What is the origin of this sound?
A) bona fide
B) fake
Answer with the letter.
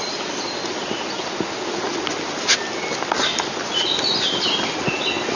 A